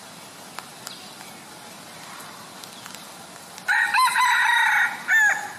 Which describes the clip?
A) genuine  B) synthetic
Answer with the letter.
A